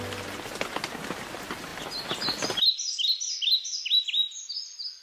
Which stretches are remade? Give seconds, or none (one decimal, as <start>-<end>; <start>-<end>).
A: none